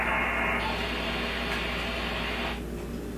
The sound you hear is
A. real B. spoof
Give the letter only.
A